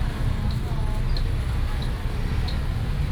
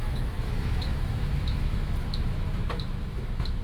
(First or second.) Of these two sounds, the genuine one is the first